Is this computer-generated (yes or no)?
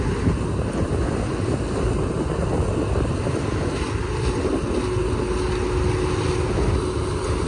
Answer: no